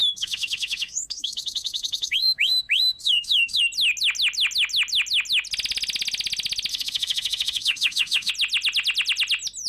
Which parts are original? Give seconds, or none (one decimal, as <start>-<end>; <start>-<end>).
3.6-6.7; 8.3-9.7